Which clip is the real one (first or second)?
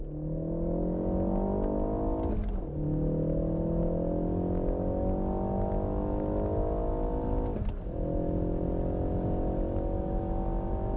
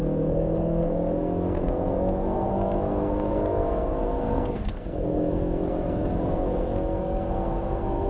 first